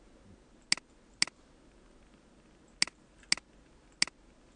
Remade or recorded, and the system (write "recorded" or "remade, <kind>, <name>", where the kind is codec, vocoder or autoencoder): recorded